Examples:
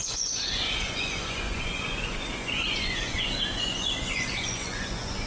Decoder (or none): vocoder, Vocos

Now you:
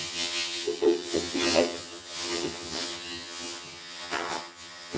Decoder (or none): vocoder, HiFi-GAN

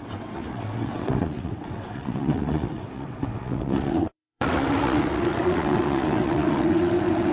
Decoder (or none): vocoder, WaveNeXt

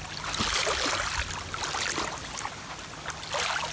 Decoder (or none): none